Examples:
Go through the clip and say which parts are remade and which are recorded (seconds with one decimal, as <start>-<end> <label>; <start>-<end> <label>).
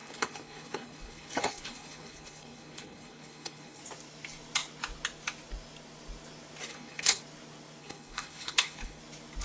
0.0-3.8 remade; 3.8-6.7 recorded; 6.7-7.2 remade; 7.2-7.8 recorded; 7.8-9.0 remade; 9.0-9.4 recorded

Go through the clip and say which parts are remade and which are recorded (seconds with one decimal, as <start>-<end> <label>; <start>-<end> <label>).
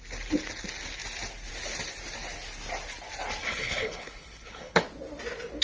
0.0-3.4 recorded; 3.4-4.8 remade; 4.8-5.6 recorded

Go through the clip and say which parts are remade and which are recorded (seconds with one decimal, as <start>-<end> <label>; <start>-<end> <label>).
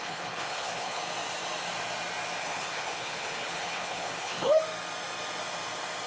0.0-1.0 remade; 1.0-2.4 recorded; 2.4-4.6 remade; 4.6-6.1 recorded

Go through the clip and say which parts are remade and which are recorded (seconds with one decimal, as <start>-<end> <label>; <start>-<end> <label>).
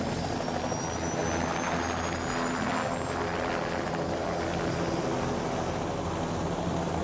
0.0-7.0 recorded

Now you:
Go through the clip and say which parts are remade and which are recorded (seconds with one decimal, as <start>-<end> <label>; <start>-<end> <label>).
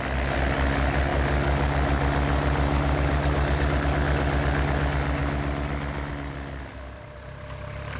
0.0-8.0 recorded